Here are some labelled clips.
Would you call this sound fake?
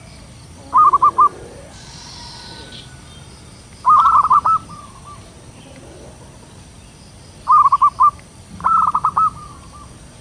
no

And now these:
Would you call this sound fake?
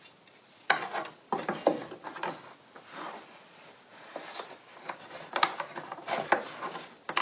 no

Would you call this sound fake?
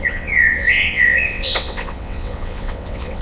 yes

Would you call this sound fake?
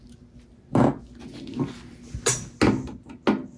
no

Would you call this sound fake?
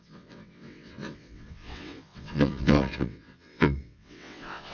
yes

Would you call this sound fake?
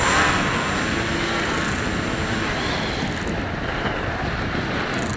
no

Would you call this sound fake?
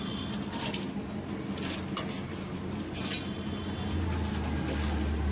no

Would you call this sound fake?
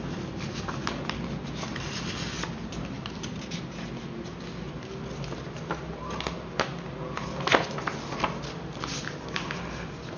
no